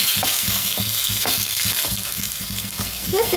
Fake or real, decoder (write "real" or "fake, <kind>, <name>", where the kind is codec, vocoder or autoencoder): fake, codec, SNAC